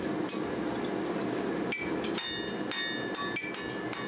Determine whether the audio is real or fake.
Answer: real